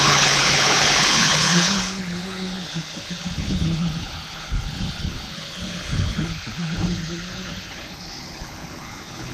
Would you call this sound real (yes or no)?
no